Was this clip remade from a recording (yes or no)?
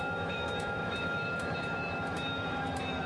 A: yes